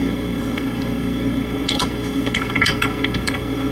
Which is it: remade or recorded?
remade